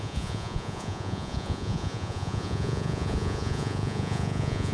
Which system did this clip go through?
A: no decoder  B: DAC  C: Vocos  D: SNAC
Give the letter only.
C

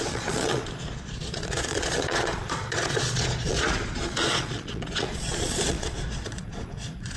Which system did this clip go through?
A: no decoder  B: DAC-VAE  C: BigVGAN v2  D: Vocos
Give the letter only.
D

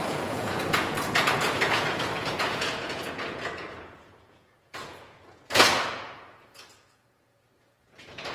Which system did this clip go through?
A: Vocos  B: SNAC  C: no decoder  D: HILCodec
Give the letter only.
A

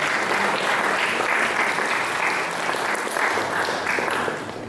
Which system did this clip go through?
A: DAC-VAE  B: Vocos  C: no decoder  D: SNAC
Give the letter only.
C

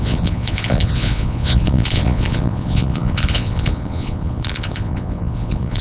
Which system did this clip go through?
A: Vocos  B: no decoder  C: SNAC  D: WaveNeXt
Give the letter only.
A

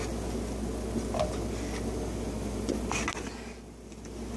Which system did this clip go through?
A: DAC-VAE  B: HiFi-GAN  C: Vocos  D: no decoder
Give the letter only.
D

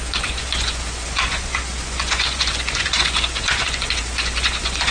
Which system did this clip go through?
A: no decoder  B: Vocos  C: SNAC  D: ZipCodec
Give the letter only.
B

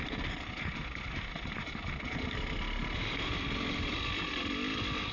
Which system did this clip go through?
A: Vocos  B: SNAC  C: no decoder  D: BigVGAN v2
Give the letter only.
C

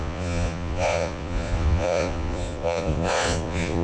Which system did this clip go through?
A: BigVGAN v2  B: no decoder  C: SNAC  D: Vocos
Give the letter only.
D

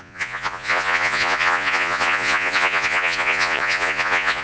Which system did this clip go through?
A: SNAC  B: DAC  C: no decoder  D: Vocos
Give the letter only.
D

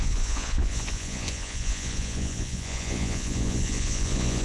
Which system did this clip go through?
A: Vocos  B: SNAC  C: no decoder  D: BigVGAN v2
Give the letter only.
A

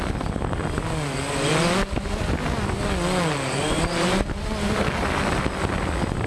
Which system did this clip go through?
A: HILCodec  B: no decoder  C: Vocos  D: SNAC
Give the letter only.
B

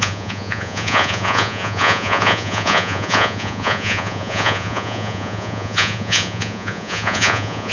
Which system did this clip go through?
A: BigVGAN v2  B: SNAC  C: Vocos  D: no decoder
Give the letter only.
C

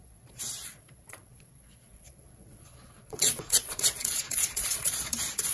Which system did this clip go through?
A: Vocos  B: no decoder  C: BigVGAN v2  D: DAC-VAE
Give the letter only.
A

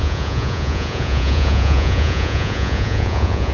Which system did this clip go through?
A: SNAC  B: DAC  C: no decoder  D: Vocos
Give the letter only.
D